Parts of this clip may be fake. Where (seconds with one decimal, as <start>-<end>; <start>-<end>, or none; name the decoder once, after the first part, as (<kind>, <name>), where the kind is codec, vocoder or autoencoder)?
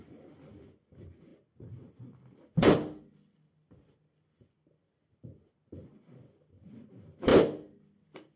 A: none